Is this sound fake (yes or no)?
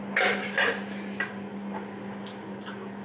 no